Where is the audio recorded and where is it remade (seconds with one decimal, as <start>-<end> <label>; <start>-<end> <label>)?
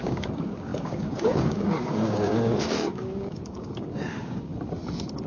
0.0-4.5 remade; 4.5-5.3 recorded